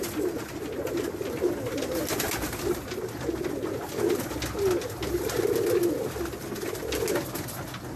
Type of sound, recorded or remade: recorded